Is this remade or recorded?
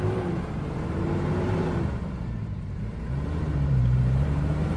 remade